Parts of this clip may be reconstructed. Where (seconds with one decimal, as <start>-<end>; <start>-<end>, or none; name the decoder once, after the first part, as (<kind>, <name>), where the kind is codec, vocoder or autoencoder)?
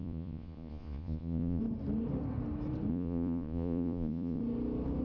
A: 0.0-1.6 (vocoder, Vocos); 2.9-4.4